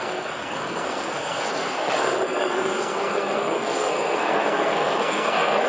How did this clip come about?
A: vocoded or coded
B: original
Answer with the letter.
A